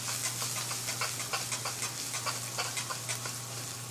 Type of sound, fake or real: real